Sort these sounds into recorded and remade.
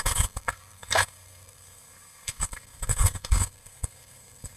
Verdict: remade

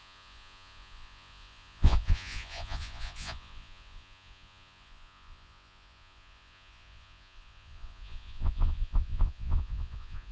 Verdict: remade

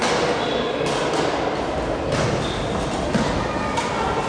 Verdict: recorded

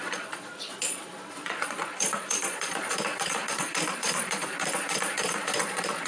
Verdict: remade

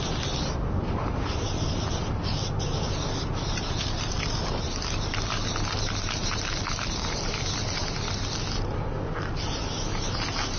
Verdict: recorded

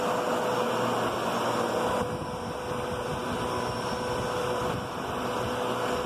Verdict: recorded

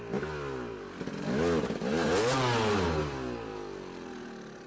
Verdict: recorded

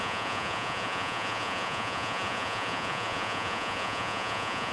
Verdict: remade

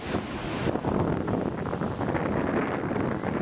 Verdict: recorded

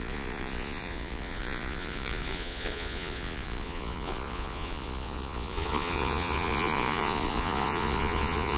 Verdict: remade